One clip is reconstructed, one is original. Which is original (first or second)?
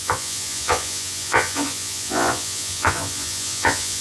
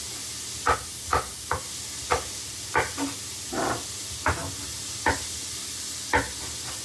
second